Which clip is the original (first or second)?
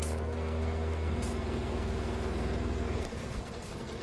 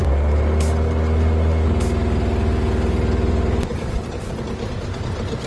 second